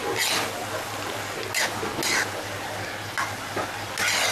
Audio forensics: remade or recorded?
recorded